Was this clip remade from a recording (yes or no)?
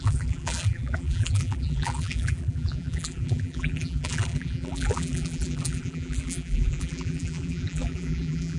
yes